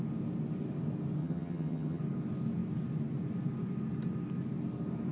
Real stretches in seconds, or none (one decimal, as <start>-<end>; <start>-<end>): 0.0-1.2; 2.0-5.1

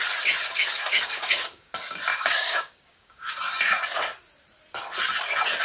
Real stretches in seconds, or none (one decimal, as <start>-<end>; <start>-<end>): 0.0-0.8; 1.7-2.1; 3.3-5.6

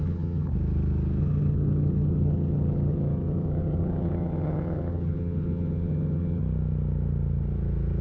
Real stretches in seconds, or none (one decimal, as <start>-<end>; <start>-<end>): 0.5-1.2; 6.4-8.0

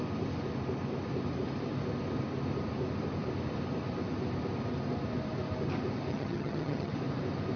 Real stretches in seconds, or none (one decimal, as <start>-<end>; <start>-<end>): 0.0-6.1; 6.9-7.6

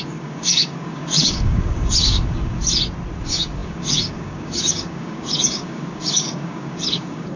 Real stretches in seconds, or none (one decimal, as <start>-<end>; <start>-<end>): 2.6-3.2